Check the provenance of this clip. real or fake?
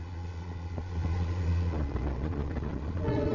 fake